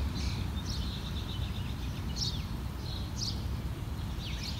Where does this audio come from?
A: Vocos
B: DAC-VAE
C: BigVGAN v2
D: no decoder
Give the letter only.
D